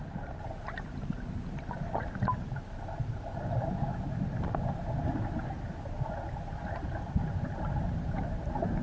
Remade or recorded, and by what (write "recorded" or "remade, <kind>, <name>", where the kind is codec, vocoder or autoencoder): recorded